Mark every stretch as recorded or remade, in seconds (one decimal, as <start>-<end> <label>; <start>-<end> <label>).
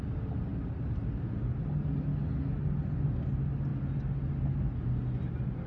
0.0-5.7 recorded